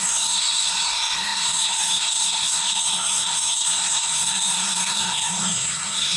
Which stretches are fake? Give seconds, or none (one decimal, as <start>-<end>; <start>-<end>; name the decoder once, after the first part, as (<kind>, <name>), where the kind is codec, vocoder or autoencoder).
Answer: 0.0-6.2 (codec, SNAC)